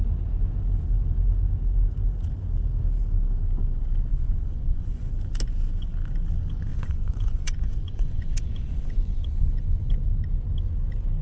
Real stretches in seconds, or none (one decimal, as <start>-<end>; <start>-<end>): 0.0-4.1; 5.1-6.7; 9.9-11.2